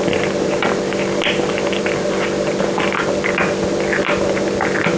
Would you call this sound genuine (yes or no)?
yes